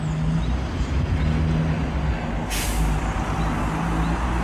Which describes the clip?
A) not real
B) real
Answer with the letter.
B